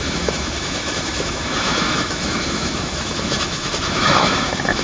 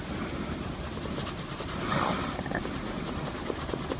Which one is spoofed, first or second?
first